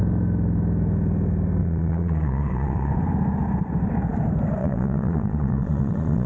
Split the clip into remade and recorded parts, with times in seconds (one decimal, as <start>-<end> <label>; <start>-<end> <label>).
0.0-1.6 recorded; 1.6-2.9 remade; 2.9-4.6 recorded; 4.6-6.3 remade